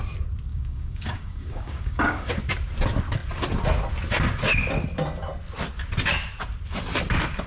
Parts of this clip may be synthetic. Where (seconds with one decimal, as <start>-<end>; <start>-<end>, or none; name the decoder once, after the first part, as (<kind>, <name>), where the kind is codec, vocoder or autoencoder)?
0.5-2.3 (codec, DAC)